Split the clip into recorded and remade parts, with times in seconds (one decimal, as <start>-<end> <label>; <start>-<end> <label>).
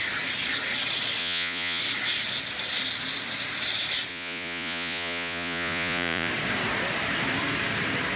0.0-1.2 recorded; 1.2-1.8 remade; 1.8-4.1 recorded; 4.1-6.3 remade; 6.3-8.2 recorded